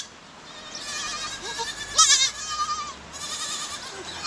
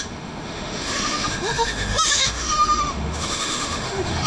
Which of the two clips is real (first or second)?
first